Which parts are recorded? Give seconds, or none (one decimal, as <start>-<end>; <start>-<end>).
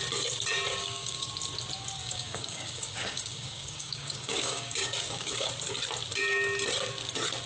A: 0.0-0.7; 1.3-2.0; 5.5-7.5